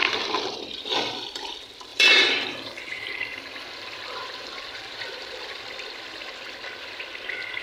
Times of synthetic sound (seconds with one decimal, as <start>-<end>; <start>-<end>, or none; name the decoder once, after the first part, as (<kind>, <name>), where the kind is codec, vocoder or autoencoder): 1.9-5.6 (vocoder, BigVGAN v2)